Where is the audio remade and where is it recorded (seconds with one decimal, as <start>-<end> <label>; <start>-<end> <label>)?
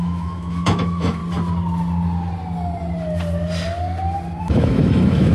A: 0.0-1.2 remade; 1.2-4.4 recorded; 4.4-5.3 remade